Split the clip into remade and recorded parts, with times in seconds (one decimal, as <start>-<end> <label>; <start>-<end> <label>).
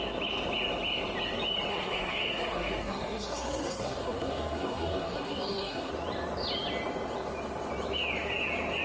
0.0-1.7 recorded; 1.7-5.9 remade; 5.9-8.8 recorded